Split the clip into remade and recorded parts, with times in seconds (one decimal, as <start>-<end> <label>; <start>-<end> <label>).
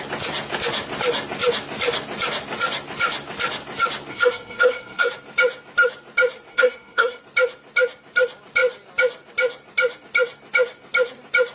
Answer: 0.0-4.1 recorded; 4.1-5.1 remade; 5.1-6.5 recorded; 6.5-7.2 remade; 7.2-11.5 recorded